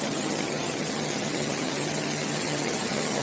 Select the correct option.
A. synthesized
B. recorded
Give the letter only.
A